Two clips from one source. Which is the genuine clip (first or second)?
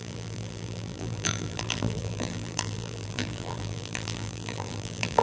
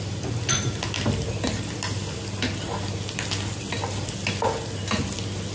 second